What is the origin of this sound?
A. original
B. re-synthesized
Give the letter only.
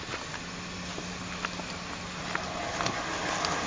A